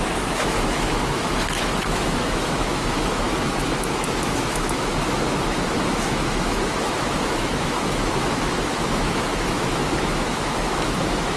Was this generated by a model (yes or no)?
yes